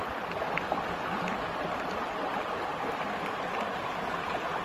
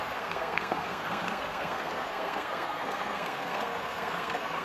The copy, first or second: second